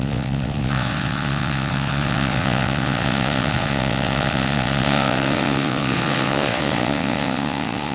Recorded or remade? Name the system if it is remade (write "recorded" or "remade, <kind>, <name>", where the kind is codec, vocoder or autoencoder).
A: remade, vocoder, WaveNeXt